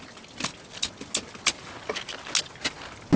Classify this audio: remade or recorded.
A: recorded